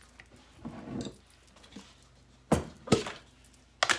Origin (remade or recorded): recorded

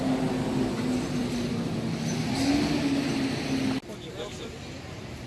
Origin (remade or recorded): recorded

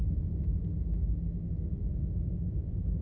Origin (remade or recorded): remade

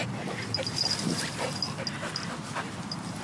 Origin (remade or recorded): recorded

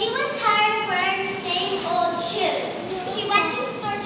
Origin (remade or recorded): recorded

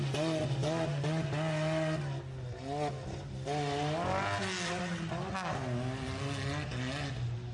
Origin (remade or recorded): recorded